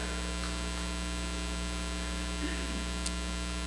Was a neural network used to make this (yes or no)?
no